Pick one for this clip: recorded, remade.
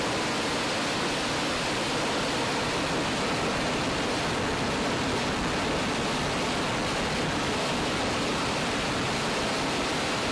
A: recorded